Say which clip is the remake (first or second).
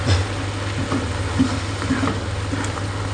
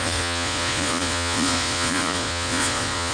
second